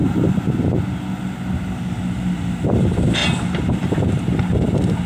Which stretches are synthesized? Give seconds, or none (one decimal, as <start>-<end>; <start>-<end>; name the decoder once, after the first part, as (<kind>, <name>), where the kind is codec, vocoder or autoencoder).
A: none